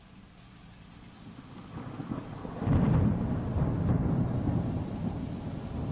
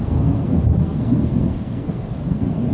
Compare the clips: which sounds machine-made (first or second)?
second